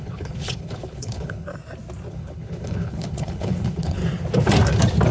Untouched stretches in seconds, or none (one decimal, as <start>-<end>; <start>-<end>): 1.5-2.1; 4.0-5.1

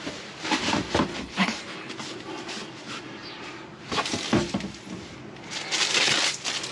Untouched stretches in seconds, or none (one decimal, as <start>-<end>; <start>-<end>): 0.0-1.1; 1.9-6.7

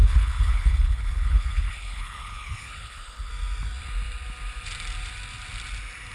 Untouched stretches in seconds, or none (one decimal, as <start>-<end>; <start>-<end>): 3.3-6.1